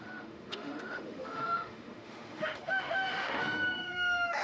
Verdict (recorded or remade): remade